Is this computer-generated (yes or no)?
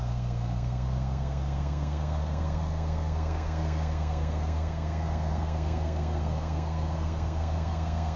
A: yes